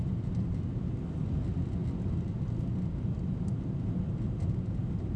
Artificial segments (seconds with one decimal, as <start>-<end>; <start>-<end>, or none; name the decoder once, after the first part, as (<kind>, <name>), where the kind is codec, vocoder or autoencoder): none